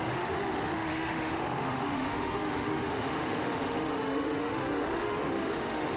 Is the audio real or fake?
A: fake